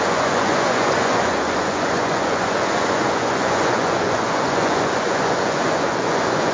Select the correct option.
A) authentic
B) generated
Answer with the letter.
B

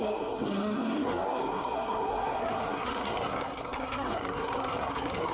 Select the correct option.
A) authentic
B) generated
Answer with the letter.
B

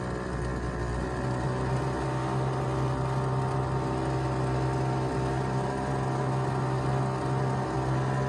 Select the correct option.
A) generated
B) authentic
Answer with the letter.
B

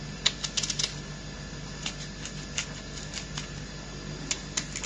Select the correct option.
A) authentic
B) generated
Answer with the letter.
A